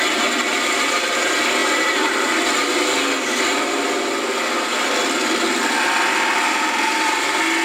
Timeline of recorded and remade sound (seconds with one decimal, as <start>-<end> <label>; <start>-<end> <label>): 0.0-7.6 recorded